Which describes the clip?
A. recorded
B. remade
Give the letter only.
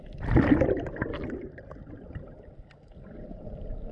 B